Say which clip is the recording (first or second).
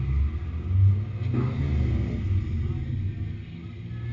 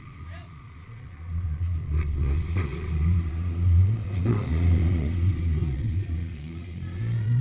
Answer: first